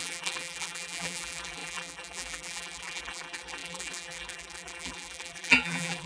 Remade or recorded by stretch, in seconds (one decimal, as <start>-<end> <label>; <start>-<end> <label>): 0.0-6.1 remade